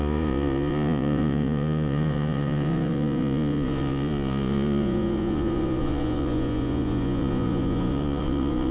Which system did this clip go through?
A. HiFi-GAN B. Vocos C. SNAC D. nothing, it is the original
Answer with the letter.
B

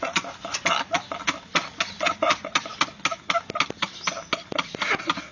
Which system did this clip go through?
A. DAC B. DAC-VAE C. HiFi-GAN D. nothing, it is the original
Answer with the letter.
D